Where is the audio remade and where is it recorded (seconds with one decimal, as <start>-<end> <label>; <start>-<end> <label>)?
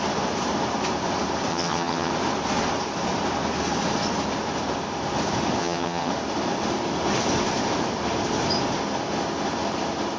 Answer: 0.0-1.5 recorded; 1.5-2.1 remade; 2.1-5.6 recorded; 5.6-6.1 remade; 6.1-10.2 recorded